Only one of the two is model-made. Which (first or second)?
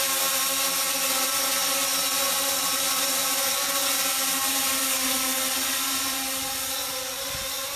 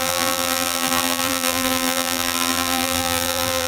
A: second